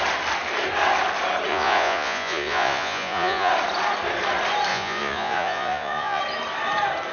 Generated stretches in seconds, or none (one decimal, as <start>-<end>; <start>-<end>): 1.5-3.5; 4.7-6.2